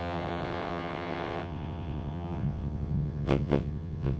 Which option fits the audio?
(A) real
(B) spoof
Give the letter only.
B